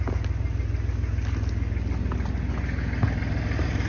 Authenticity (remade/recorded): recorded